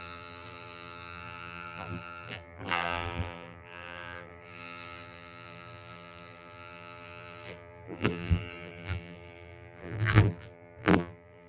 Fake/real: fake